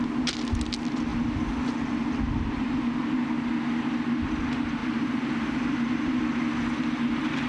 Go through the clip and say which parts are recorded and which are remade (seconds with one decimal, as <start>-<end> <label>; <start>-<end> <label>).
0.0-4.8 recorded; 4.8-6.2 remade; 6.2-7.5 recorded